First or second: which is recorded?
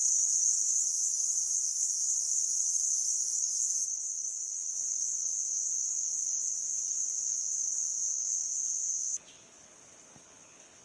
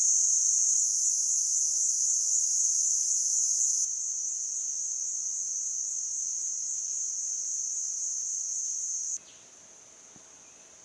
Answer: second